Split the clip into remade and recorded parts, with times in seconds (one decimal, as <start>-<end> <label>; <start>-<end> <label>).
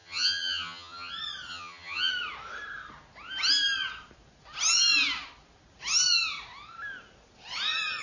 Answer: 0.0-1.1 remade; 1.1-1.5 recorded; 1.5-2.1 remade; 2.1-8.0 recorded